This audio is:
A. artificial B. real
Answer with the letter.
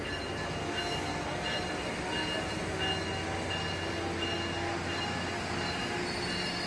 B